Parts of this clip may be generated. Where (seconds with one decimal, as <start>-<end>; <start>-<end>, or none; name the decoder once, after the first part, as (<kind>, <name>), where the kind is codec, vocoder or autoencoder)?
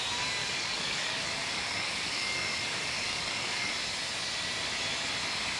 0.4-3.7 (codec, DAC)